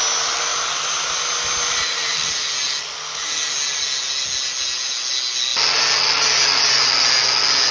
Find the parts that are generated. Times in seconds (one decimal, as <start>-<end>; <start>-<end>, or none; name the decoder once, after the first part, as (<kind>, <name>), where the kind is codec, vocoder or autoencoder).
none